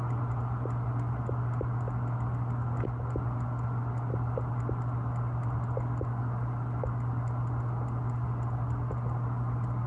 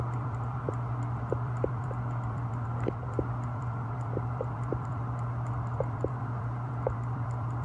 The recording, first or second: first